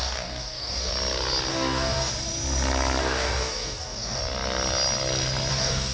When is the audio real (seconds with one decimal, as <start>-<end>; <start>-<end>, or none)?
0.9-1.5; 2.1-3.0; 4.2-5.5